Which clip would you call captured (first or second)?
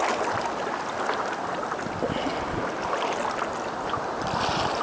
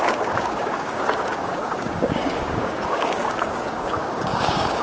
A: first